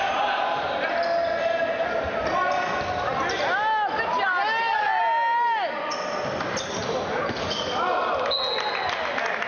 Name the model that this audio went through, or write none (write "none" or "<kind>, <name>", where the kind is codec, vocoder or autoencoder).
none